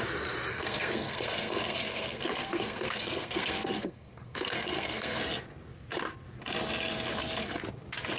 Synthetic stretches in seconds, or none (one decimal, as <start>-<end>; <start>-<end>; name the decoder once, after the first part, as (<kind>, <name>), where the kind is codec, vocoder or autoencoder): 0.5-5.2 (codec, SNAC)